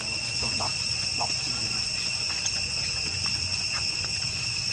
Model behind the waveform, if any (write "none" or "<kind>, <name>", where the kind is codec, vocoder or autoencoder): vocoder, Vocos